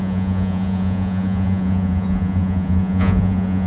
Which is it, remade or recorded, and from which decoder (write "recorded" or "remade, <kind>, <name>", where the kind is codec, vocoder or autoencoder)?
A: remade, vocoder, Vocos